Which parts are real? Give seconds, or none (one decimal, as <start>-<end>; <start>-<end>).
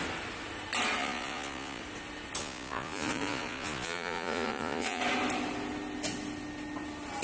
0.0-1.0; 1.8-2.4; 5.0-7.2